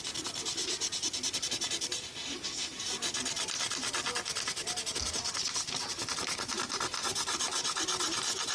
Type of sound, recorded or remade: recorded